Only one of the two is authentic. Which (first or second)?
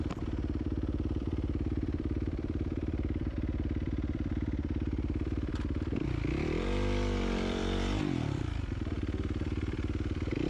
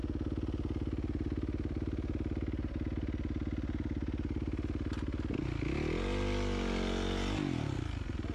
second